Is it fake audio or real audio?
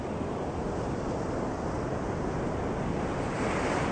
real